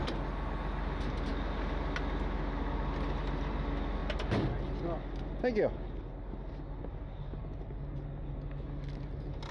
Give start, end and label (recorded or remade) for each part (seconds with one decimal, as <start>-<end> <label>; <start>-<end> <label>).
0.0-9.5 recorded